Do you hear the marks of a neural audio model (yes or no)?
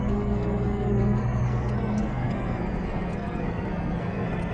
yes